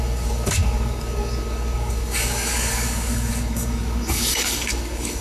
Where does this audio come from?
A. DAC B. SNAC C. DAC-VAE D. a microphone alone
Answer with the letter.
A